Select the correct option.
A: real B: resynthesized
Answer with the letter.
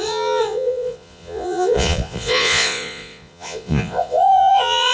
B